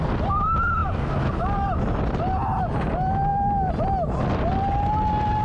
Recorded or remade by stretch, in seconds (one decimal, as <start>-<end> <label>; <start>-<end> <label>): 0.0-5.4 recorded